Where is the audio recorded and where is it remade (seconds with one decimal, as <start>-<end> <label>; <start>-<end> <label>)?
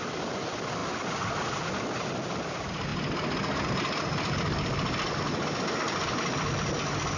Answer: 0.0-7.2 recorded